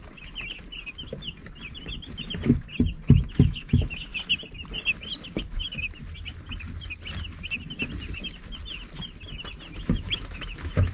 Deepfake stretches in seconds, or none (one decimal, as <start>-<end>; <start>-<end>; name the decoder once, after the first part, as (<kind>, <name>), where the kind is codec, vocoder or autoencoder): 3.3-4.1 (autoencoder, DAC-VAE); 5.4-6.0; 9.8-10.9